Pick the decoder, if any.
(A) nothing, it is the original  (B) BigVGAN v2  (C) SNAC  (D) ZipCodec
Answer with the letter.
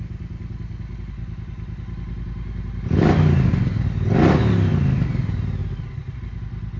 A